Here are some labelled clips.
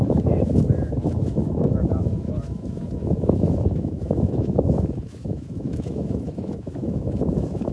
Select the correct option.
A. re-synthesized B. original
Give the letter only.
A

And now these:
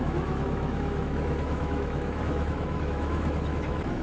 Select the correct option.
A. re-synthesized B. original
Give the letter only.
A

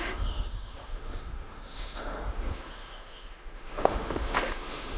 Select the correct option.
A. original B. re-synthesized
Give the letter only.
B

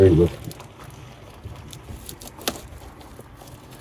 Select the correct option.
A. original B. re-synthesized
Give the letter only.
A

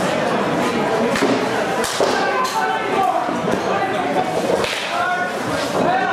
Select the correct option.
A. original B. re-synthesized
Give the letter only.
A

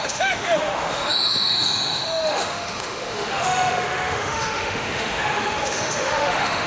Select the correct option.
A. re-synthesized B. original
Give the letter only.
A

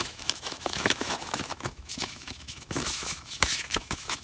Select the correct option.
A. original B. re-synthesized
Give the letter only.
B